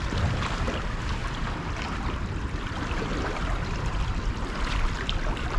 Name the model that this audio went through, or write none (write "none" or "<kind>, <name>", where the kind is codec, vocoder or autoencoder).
none